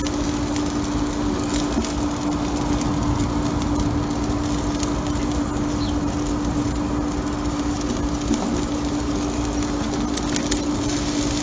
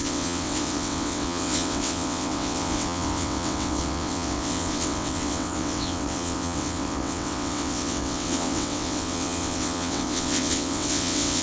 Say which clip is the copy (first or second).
second